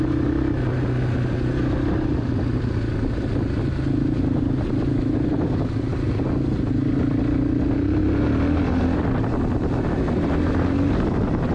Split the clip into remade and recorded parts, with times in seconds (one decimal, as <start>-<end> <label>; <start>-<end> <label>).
0.0-11.5 recorded